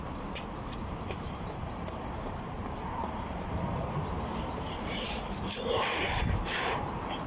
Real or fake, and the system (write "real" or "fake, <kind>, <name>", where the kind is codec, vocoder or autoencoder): fake, vocoder, BigVGAN v2